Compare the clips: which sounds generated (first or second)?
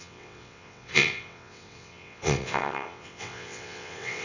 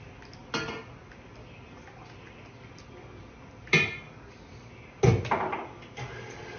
first